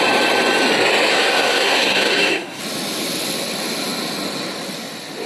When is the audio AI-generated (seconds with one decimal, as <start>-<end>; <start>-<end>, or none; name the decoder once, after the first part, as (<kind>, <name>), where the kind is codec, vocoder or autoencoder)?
1.1-2.6 (codec, SNAC)